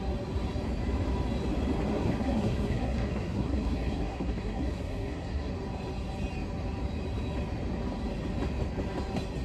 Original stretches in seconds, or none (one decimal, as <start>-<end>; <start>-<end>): 0.0-1.9; 5.5-9.4